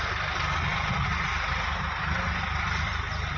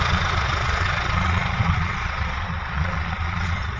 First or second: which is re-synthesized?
second